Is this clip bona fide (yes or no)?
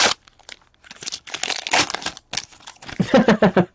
yes